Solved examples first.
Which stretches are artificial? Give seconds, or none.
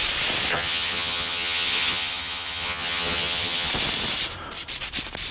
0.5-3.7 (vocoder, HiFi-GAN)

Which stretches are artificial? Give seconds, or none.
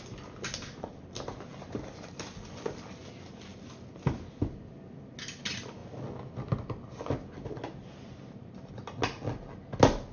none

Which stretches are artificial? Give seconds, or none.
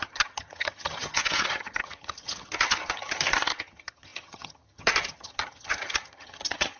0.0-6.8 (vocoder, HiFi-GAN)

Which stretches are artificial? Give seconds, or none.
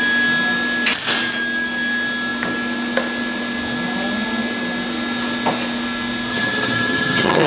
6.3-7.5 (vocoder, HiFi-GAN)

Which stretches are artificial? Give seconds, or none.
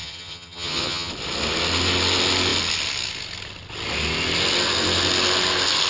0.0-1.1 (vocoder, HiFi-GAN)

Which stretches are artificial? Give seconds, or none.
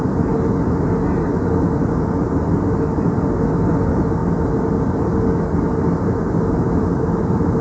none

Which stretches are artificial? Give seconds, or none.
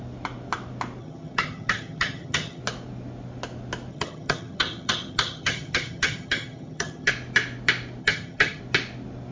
1.0-2.6 (vocoder, HiFi-GAN); 3.9-7.1; 8.0-8.6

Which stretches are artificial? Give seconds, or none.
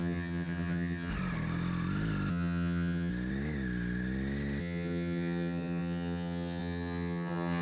0.0-1.1 (vocoder, HiFi-GAN); 2.3-3.1; 4.6-7.6